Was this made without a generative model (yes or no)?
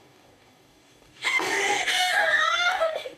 no